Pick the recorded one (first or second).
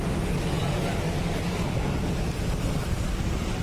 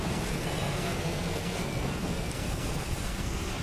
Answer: first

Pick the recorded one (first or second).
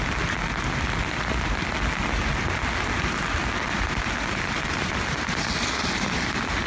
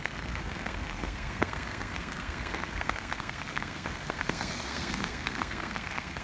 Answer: first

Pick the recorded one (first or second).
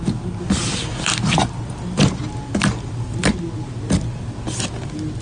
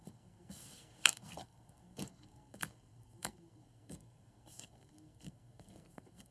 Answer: first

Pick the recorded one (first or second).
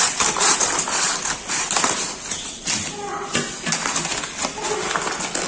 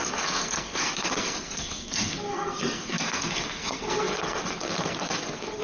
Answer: first